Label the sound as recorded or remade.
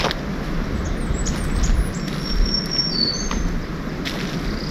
recorded